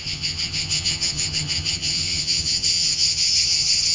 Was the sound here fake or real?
fake